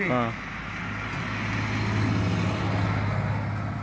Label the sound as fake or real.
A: real